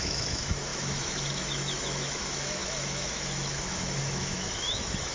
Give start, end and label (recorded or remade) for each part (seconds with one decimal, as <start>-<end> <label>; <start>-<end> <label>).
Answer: 0.0-5.1 remade